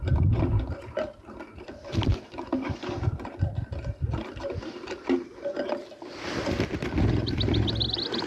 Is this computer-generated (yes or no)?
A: yes